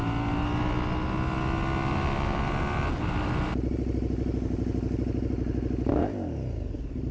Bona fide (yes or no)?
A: yes